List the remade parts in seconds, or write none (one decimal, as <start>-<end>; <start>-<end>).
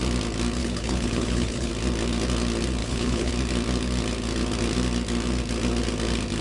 0.6-1.7; 2.8-3.3